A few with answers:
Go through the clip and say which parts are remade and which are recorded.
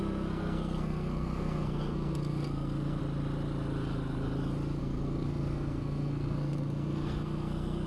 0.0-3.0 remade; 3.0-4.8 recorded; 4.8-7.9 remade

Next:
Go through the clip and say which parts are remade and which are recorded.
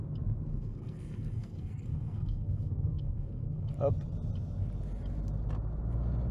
0.0-0.5 recorded; 0.5-3.7 remade; 3.7-6.3 recorded